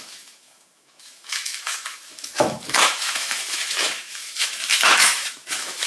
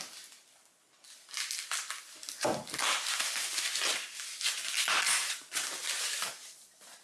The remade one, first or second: first